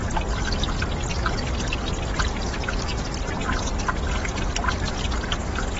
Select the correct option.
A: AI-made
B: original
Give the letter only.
B